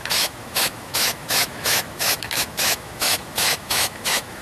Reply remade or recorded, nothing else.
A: remade